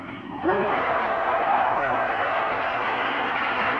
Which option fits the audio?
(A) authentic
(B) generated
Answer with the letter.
B